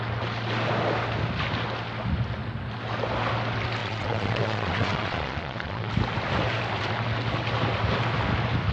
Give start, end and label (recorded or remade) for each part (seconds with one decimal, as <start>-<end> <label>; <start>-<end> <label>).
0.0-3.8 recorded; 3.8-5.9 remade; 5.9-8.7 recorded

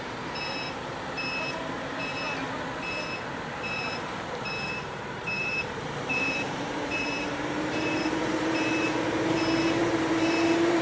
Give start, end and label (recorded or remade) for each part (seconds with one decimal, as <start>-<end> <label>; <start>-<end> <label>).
0.0-2.1 remade; 2.1-3.6 recorded; 3.6-10.8 remade

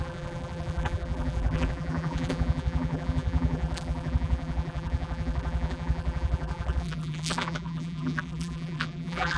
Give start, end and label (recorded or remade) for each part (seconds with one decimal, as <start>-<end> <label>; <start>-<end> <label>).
0.0-9.4 remade

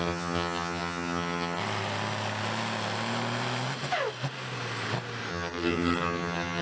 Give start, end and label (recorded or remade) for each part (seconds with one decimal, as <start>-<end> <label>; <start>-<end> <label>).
0.0-1.6 remade; 1.6-5.3 recorded; 5.3-6.6 remade

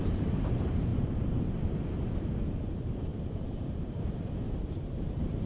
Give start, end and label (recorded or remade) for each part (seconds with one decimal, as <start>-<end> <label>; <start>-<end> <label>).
0.0-5.5 remade